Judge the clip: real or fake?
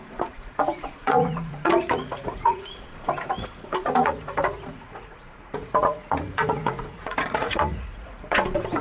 fake